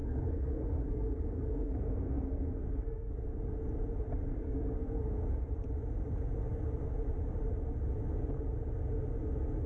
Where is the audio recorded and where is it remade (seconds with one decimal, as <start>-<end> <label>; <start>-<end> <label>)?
0.0-3.1 remade; 3.1-4.3 recorded; 4.3-5.1 remade; 5.1-9.7 recorded